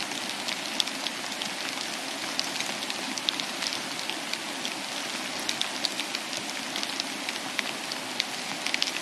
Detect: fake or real real